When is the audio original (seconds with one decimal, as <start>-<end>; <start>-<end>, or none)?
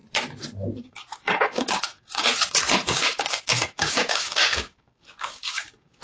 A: 0.0-0.8; 2.3-2.8